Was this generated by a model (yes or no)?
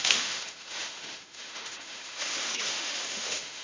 yes